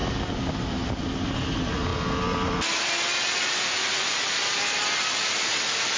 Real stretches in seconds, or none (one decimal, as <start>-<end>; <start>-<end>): 0.0-6.0

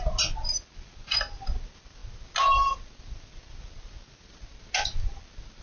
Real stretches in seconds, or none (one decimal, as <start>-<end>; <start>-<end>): 0.0-5.6

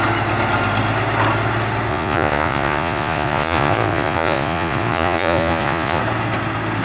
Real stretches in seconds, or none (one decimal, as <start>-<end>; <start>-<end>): 0.0-1.9; 6.0-6.8

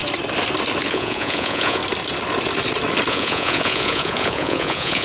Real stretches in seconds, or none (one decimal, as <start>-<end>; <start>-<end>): 0.0-0.9; 1.8-3.1

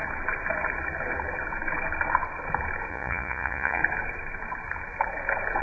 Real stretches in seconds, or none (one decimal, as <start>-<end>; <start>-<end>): 0.0-2.9; 3.8-5.6

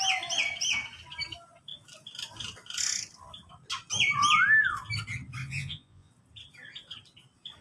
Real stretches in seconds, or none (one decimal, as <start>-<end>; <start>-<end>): 0.0-5.4; 6.1-7.6